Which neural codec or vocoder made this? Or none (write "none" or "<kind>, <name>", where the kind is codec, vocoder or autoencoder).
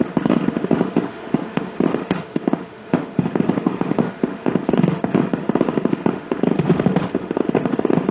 autoencoder, DAC-VAE